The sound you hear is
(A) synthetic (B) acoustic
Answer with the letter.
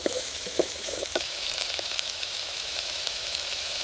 A